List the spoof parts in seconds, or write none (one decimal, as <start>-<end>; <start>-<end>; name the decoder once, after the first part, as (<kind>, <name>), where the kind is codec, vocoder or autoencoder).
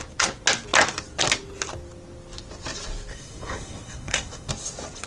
3.1-4.5 (codec, SNAC)